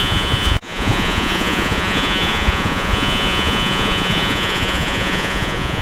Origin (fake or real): fake